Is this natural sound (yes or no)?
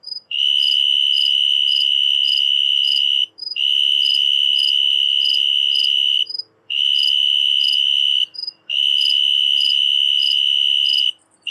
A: no